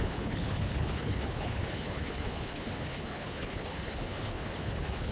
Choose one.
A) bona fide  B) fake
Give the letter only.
B